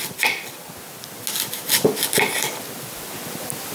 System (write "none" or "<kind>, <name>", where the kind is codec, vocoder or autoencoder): none